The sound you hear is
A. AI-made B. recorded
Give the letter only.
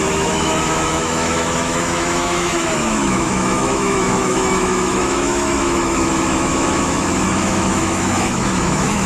A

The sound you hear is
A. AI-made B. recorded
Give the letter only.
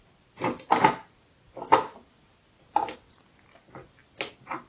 B